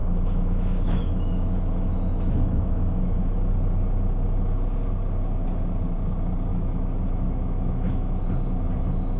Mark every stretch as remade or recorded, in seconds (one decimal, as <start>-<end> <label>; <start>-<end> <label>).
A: 0.0-3.5 remade; 3.5-6.5 recorded; 6.5-8.2 remade; 8.2-9.2 recorded